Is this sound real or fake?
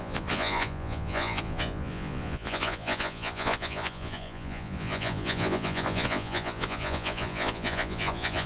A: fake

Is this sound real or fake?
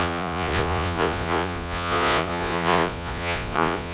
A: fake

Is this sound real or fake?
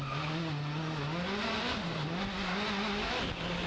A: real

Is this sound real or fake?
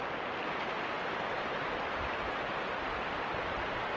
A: real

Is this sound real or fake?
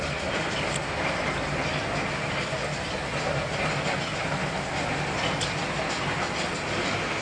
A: real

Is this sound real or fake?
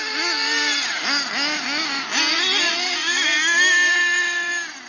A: real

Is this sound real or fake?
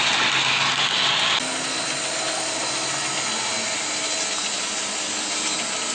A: real